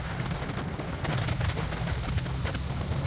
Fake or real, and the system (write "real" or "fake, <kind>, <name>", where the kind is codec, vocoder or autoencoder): real